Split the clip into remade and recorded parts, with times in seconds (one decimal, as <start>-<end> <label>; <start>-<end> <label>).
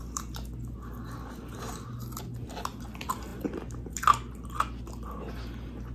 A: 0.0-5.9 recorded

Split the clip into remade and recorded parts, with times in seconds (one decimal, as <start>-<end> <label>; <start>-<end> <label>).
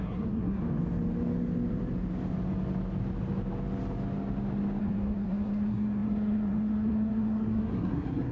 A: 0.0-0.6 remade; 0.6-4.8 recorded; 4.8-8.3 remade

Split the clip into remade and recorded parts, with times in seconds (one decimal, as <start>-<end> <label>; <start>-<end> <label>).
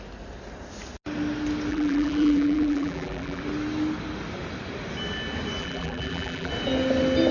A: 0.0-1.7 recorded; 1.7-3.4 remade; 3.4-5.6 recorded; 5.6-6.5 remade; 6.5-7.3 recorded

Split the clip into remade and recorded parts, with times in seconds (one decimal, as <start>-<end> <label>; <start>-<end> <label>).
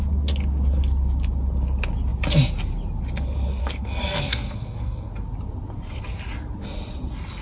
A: 0.0-3.6 recorded; 3.6-5.1 remade; 5.1-7.4 recorded